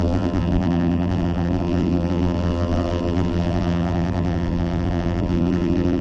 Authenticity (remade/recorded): remade